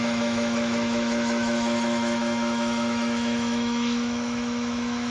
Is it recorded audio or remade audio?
remade